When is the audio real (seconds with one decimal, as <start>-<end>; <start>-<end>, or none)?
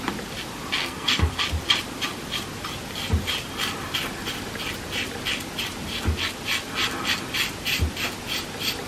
0.0-0.8; 1.4-8.9